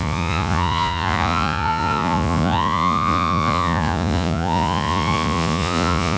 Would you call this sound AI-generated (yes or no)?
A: yes